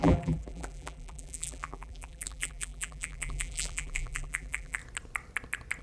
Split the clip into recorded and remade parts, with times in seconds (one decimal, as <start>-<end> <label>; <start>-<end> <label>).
0.0-4.8 remade; 4.8-5.8 recorded